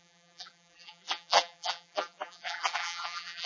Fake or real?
fake